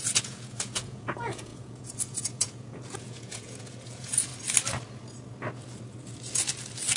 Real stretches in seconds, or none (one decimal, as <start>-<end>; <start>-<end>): 4.3-7.0